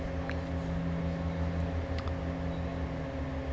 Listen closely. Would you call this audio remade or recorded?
recorded